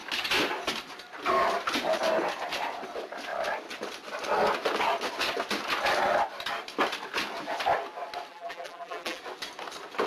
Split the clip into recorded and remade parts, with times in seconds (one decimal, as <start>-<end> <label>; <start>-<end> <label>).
0.0-8.3 recorded; 8.3-9.2 remade; 9.2-10.1 recorded